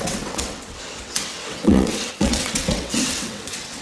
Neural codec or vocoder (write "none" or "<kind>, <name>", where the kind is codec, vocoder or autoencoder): vocoder, WaveNeXt